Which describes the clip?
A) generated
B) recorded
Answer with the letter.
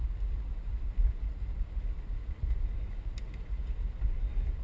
B